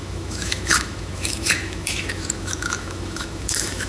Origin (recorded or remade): remade